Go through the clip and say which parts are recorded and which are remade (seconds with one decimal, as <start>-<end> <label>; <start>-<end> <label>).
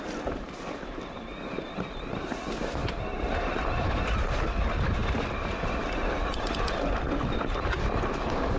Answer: 0.0-8.6 recorded